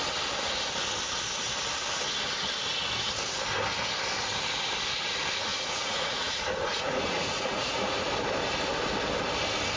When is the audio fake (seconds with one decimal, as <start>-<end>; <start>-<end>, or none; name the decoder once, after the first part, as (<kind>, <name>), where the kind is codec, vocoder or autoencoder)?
5.5-8.1 (vocoder, Vocos)